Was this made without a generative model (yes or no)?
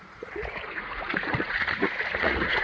no